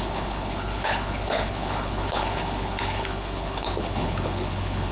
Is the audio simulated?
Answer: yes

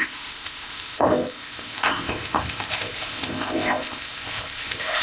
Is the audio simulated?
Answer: yes